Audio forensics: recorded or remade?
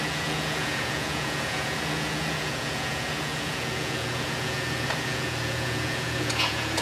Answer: remade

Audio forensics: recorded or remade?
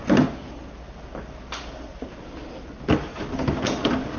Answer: recorded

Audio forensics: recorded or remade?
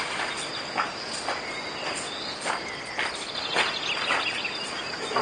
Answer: recorded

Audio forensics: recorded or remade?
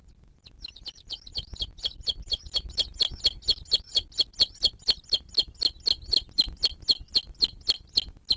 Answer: recorded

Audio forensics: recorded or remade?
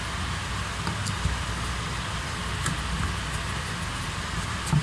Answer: recorded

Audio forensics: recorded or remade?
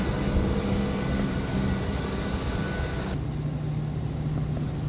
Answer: recorded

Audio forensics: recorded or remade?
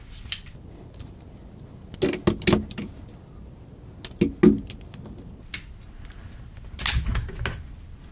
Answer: recorded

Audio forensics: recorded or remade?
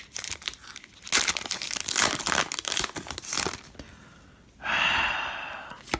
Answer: recorded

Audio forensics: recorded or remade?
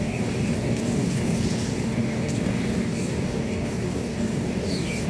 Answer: remade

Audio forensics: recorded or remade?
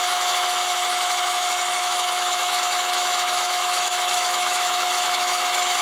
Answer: remade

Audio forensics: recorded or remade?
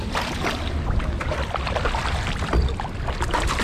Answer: recorded